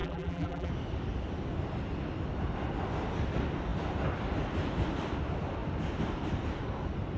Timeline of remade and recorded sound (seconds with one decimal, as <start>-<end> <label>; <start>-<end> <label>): 0.0-0.7 remade; 0.7-7.2 recorded